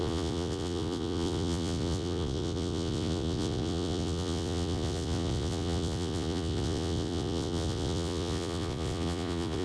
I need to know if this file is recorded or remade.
remade